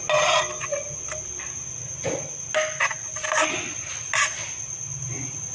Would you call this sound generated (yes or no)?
no